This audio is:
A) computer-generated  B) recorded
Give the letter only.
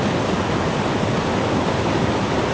B